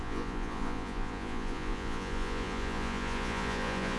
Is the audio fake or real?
fake